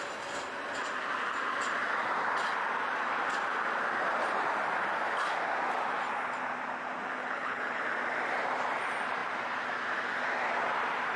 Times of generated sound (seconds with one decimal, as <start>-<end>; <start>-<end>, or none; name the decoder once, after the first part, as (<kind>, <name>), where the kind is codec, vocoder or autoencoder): 7.2-7.8 (codec, HILCodec)